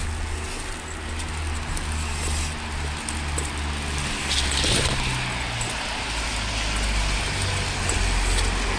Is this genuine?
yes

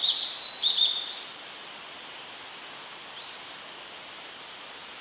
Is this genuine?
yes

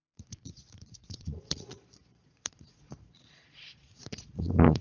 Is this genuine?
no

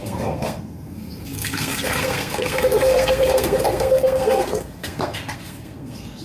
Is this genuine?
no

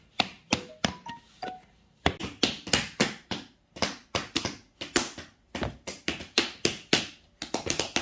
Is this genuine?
yes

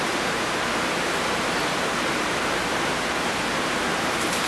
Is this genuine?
no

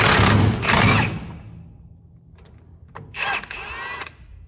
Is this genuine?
yes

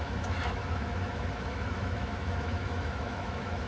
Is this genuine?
no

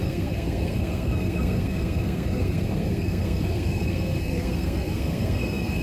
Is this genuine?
no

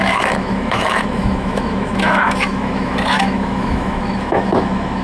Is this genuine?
no